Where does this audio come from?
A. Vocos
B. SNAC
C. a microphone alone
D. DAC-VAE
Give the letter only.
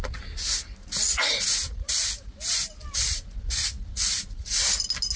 C